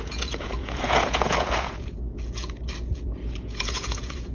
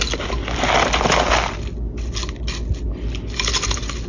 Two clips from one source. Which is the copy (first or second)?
first